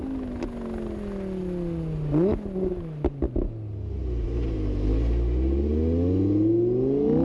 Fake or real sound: real